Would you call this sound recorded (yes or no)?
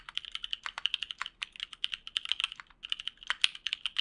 yes